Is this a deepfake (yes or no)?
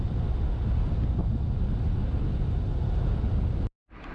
no